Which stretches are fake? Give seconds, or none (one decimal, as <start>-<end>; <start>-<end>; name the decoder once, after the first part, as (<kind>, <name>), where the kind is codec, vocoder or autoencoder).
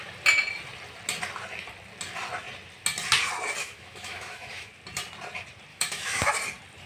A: 3.6-4.7 (autoencoder, DAC-VAE); 5.7-6.3